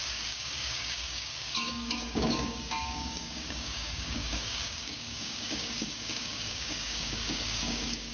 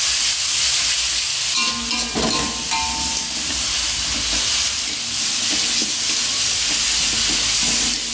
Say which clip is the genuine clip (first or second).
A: second